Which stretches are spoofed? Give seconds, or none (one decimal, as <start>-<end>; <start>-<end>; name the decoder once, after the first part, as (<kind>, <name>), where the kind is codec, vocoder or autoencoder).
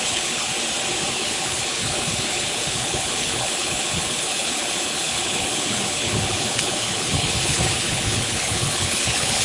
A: 0.0-0.5 (codec, HILCodec); 1.1-9.4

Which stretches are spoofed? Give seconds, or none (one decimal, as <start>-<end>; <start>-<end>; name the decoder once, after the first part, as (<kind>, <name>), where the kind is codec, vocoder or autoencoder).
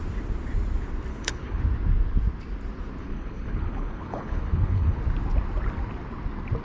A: 1.1-1.6 (codec, HILCodec); 3.0-5.0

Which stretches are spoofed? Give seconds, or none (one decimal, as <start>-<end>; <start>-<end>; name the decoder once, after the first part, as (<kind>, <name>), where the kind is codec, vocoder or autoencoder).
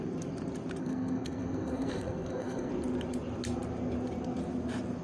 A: 0.8-2.7 (codec, SNAC)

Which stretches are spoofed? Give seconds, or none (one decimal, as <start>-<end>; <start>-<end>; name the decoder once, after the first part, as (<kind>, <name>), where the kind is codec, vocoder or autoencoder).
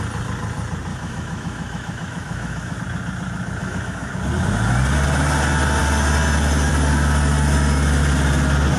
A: 0.9-2.8 (autoencoder, DAC-VAE); 3.6-4.1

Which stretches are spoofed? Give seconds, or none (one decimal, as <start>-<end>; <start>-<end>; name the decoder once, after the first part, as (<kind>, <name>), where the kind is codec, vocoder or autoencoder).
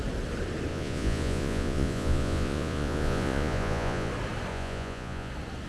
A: 0.7-4.1 (vocoder, Vocos); 4.5-5.3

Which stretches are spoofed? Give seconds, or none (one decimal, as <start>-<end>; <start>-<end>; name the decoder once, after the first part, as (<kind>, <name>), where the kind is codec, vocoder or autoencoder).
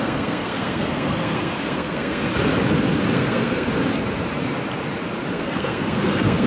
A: 0.0-2.3 (codec, SNAC); 3.1-3.7; 5.3-6.5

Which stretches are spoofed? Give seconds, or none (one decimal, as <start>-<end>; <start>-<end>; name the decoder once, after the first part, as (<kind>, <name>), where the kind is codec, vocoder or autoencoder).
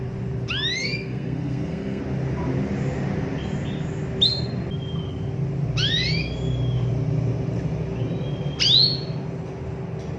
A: 0.8-2.0 (codec, SNAC)